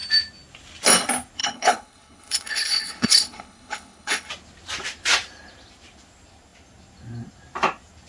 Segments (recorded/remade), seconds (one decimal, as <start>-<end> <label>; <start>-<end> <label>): 0.0-1.4 recorded; 1.4-4.3 remade; 4.3-8.1 recorded